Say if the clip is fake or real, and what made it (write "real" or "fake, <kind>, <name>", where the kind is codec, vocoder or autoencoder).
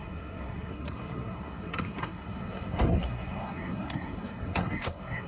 fake, codec, SNAC